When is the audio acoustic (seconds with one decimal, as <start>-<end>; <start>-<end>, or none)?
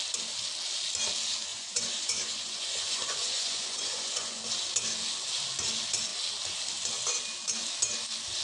0.0-1.5; 4.4-8.4